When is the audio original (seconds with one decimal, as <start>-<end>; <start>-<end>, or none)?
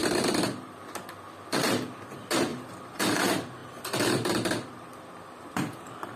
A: 0.9-2.5; 3.2-3.6